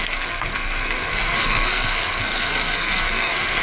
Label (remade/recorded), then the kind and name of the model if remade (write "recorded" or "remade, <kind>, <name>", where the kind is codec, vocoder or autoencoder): remade, codec, SNAC